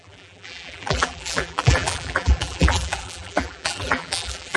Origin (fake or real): fake